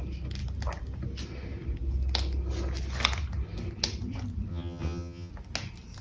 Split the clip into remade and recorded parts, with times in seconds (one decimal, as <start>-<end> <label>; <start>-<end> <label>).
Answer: 0.0-4.5 recorded; 4.5-5.3 remade; 5.3-6.0 recorded